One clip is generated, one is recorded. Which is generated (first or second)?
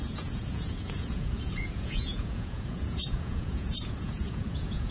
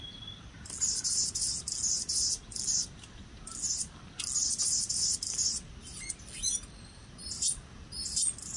first